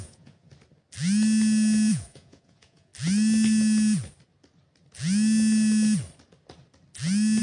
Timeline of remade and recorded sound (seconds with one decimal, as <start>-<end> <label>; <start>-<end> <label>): 0.0-0.5 remade; 0.5-1.9 recorded; 1.9-2.9 remade; 2.9-7.4 recorded